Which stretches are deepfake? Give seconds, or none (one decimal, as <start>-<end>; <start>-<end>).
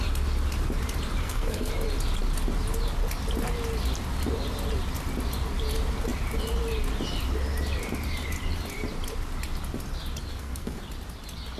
1.2-1.7; 10.3-10.8